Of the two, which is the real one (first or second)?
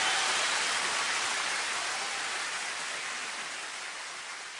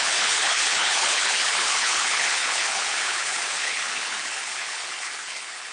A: first